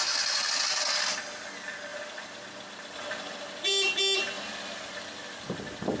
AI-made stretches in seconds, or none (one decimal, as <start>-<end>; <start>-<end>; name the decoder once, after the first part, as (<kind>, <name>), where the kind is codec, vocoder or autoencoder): 1.9-5.5 (vocoder, BigVGAN v2)

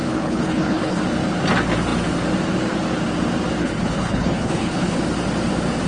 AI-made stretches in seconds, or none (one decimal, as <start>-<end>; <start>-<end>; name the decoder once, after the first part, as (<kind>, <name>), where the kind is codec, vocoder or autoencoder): 0.0-1.0 (codec, HILCodec); 3.6-5.0

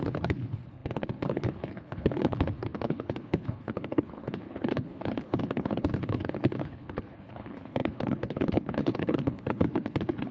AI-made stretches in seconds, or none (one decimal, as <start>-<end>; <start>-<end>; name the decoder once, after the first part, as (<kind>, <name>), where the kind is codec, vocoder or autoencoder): 0.0-10.3 (codec, HILCodec)